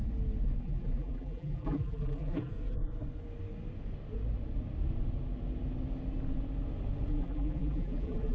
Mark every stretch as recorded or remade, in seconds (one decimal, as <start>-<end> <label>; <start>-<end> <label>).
0.0-0.6 recorded; 0.6-2.5 remade; 2.5-7.1 recorded; 7.1-8.3 remade